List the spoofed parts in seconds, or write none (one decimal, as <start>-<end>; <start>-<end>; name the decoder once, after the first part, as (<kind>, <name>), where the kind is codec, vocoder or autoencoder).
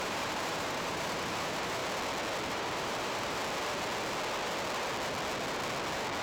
0.0-1.8 (vocoder, BigVGAN v2); 2.5-3.4